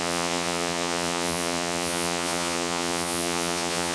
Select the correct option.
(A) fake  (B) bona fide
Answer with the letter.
A